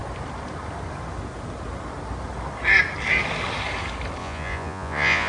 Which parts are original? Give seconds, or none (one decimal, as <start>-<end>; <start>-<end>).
0.0-4.2